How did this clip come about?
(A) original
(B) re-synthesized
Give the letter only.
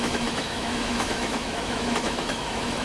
B